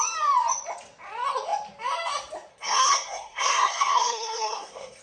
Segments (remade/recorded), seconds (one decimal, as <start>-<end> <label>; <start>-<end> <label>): 0.0-2.5 recorded; 2.5-5.0 remade

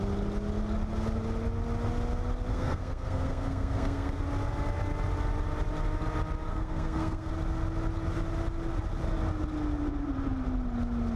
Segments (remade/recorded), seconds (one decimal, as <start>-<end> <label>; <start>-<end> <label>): 0.0-2.5 recorded; 2.5-4.2 remade; 4.2-6.5 recorded; 6.5-7.3 remade; 7.3-11.2 recorded